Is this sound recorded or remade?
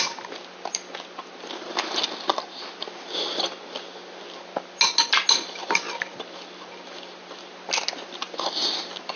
recorded